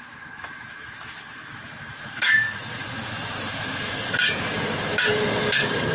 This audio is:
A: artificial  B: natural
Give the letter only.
A